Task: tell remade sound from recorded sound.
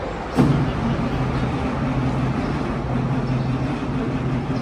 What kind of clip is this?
recorded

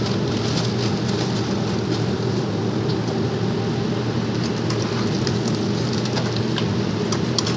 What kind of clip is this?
recorded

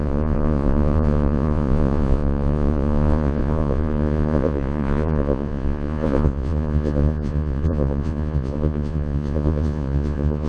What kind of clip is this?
remade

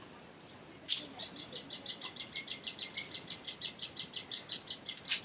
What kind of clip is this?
remade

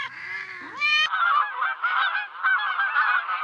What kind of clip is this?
remade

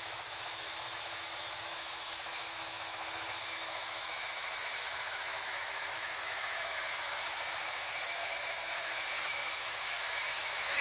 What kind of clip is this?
remade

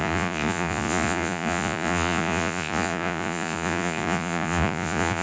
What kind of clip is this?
remade